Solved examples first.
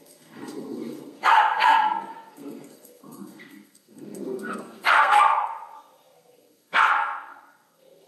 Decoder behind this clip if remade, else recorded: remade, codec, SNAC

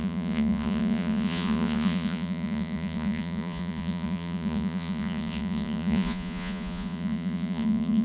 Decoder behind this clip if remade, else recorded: remade, vocoder, Vocos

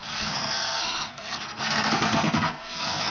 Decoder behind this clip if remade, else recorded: remade, codec, SNAC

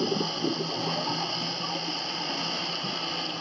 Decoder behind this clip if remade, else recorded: recorded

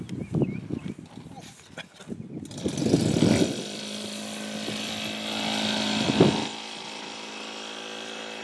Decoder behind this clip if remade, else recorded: recorded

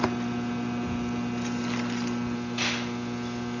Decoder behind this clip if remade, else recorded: recorded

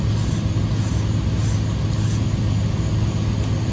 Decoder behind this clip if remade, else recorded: recorded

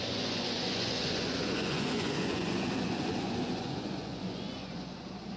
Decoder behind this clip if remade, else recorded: remade, vocoder, Vocos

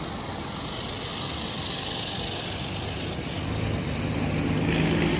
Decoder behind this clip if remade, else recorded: recorded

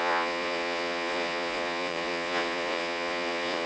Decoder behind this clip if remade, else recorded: remade, vocoder, Vocos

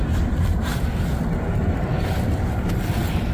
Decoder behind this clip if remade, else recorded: remade, vocoder, BigVGAN v2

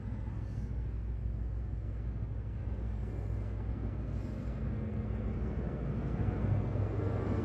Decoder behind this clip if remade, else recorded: remade, codec, SNAC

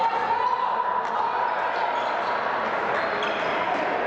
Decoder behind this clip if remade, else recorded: recorded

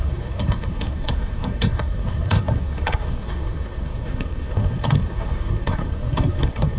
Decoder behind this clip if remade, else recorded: remade, codec, SNAC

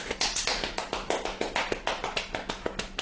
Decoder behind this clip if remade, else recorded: recorded